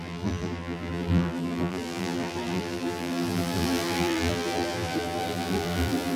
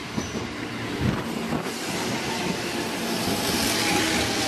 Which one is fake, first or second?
first